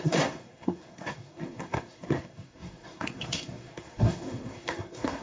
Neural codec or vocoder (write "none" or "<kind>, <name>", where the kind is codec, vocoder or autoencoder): codec, SNAC